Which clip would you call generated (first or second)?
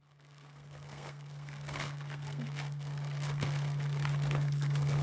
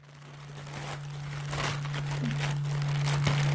first